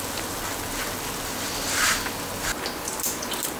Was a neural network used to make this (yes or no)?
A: no